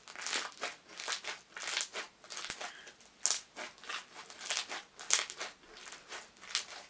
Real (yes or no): yes